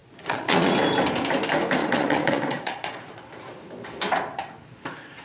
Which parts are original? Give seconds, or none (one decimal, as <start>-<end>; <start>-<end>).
0.7-1.8; 3.2-5.2